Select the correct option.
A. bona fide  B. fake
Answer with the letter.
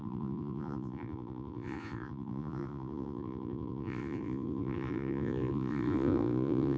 B